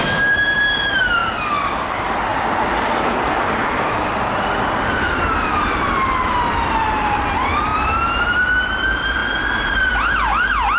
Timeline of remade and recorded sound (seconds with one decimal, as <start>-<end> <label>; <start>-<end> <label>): 0.0-1.2 remade; 1.2-1.9 recorded; 1.9-2.3 remade; 2.3-3.2 recorded; 3.2-7.7 remade; 7.7-8.2 recorded; 8.2-10.8 remade